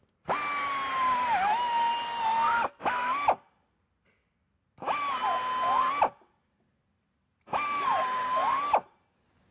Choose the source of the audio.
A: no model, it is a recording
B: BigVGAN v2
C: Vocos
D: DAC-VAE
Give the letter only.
A